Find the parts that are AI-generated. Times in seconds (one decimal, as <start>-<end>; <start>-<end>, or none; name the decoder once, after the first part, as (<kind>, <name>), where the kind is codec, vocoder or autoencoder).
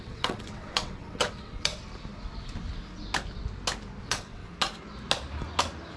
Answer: 0.0-1.7 (vocoder, WaveNeXt); 4.0-4.4